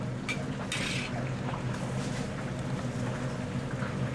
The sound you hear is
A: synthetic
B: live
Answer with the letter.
B